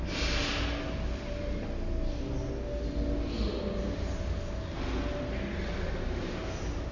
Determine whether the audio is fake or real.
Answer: real